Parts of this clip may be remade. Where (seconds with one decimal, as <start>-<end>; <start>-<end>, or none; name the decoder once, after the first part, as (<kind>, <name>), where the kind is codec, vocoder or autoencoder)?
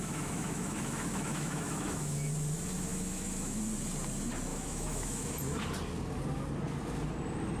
0.0-2.3 (autoencoder, DAC-VAE); 2.9-3.6; 4.5-5.4